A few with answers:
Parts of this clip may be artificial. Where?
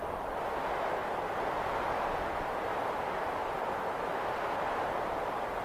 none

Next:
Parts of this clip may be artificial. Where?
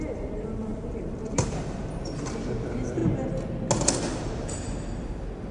0.0-3.0 (vocoder, BigVGAN v2); 4.2-5.5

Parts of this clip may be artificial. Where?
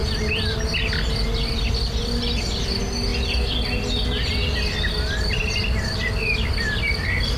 none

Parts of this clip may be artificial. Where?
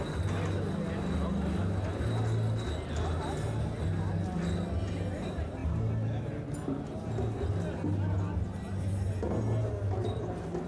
none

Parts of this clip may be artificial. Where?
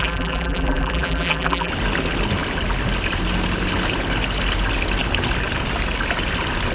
0.0-1.7 (vocoder, BigVGAN v2)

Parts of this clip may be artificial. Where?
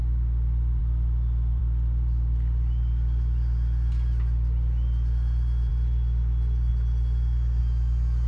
none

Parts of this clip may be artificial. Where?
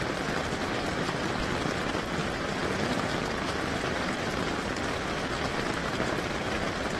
0.6-1.4 (vocoder, BigVGAN v2); 2.2-4.3; 5.8-6.5